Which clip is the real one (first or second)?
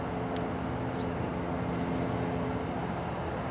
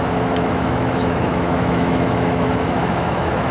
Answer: first